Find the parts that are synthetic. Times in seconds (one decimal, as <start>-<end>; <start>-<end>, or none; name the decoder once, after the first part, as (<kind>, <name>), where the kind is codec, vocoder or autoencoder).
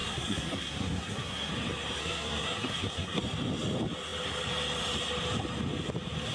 0.0-1.5 (codec, SNAC); 2.0-3.2